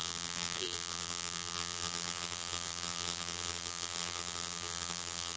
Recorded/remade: remade